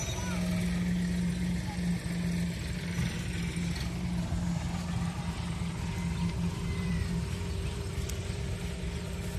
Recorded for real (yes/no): yes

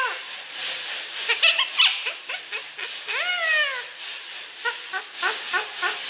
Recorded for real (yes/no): yes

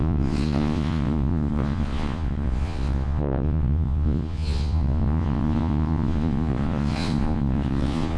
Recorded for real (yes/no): no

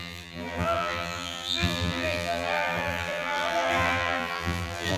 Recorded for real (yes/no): no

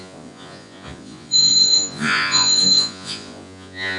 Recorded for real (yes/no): no